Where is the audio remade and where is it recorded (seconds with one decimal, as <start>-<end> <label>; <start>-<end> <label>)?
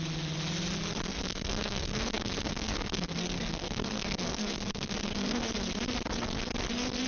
0.0-1.1 recorded; 1.1-5.4 remade; 5.4-7.1 recorded